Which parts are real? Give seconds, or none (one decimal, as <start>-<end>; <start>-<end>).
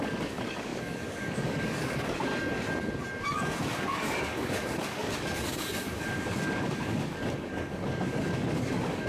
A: 2.3-3.2